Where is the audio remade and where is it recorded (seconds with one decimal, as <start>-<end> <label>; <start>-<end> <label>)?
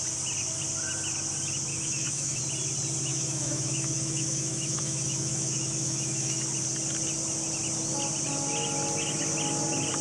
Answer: 0.0-1.7 recorded; 1.7-2.4 remade; 2.4-3.1 recorded; 3.1-6.4 remade; 6.4-10.0 recorded